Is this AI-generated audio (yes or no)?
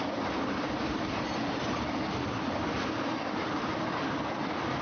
no